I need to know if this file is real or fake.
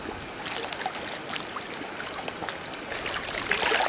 real